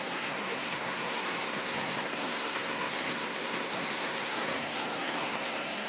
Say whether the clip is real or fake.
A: fake